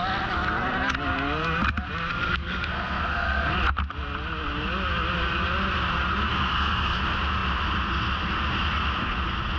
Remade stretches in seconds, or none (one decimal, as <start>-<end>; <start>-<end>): 2.1-3.5; 6.3-7.0